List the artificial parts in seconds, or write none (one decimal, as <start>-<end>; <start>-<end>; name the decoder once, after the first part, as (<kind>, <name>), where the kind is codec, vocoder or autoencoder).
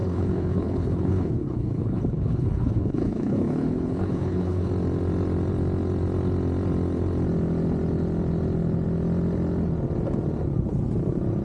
0.0-4.7 (codec, HILCodec)